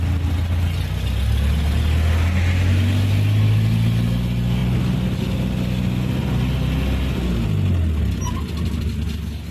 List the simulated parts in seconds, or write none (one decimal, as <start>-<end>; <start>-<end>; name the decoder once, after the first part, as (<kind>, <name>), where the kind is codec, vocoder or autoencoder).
none